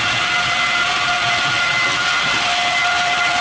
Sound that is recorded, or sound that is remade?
recorded